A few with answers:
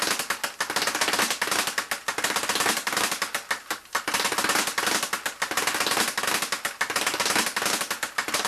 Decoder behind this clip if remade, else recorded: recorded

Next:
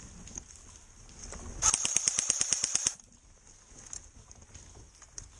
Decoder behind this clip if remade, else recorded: recorded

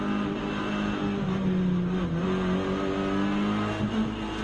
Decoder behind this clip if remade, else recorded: recorded